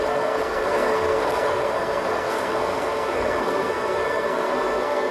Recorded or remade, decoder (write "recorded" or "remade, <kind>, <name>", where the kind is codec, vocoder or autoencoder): remade, codec, SNAC